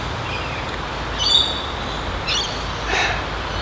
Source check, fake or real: real